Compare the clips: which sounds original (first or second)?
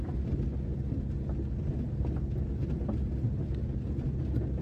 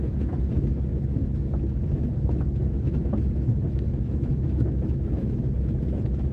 first